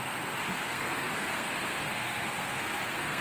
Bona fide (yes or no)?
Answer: no